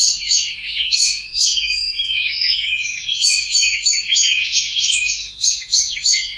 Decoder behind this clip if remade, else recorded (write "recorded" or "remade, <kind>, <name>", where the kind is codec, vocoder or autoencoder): remade, autoencoder, DAC-VAE